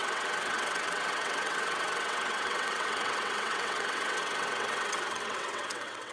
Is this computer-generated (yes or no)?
yes